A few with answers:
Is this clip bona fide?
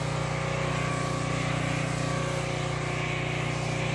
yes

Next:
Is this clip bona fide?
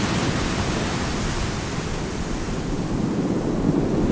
yes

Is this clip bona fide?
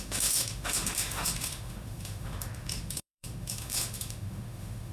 no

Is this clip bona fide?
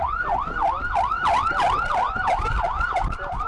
yes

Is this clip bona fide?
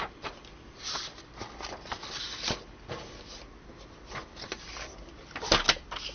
yes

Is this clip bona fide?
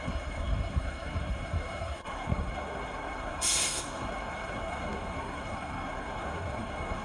no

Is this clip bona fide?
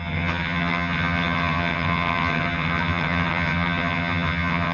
no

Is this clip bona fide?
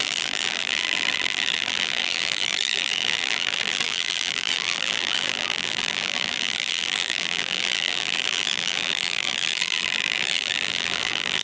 no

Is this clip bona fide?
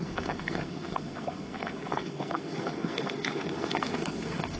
no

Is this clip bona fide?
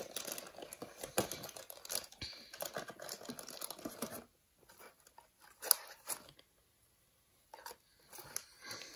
yes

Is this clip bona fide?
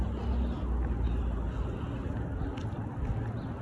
yes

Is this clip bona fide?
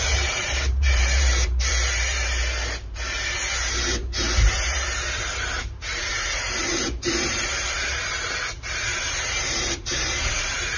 no